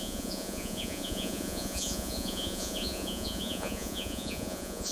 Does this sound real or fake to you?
fake